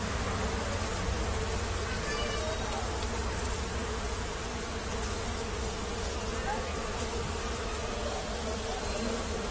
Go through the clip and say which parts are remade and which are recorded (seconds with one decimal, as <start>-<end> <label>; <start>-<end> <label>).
0.0-6.7 recorded; 6.7-7.4 remade; 7.4-8.7 recorded; 8.7-9.5 remade